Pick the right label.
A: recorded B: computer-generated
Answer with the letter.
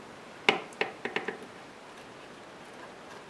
A